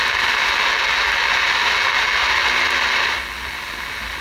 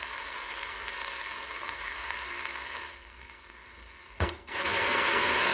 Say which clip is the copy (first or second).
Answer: second